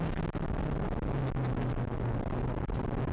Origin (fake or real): real